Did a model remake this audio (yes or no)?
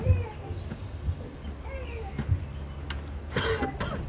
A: no